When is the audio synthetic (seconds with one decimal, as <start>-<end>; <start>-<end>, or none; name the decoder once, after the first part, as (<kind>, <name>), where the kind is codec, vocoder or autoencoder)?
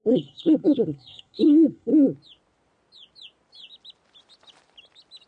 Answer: 0.0-1.9 (codec, SNAC)